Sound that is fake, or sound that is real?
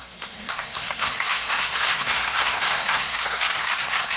fake